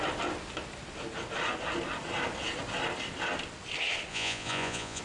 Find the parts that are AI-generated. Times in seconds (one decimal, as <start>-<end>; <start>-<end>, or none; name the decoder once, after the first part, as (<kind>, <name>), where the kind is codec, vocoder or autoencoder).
4.1-5.0 (vocoder, Vocos)